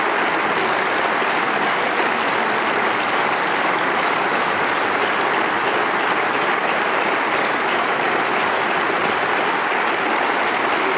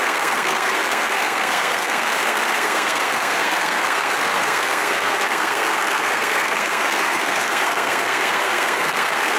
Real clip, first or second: first